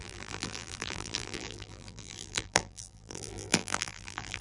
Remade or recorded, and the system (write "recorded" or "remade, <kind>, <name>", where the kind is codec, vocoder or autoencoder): remade, vocoder, BigVGAN v2